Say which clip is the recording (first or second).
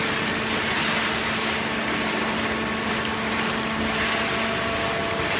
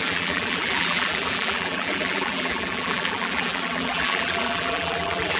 first